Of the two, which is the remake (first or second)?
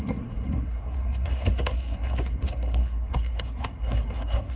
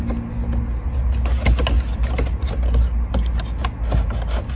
first